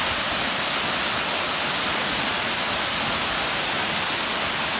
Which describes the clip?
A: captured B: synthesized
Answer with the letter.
A